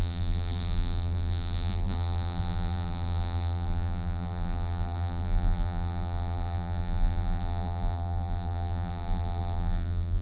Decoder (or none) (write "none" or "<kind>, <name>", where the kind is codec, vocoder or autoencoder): vocoder, BigVGAN v2